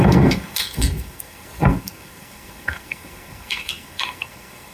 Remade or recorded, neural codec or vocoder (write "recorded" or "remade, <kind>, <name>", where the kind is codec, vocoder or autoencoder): remade, codec, SNAC